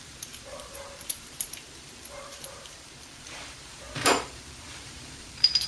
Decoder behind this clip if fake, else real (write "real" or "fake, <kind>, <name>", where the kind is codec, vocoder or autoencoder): fake, vocoder, BigVGAN v2